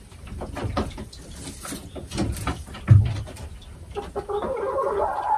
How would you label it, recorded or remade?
recorded